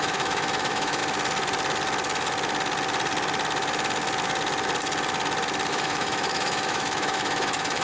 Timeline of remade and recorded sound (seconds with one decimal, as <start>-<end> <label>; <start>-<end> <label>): 0.0-1.0 remade; 1.0-5.7 recorded; 5.7-7.8 remade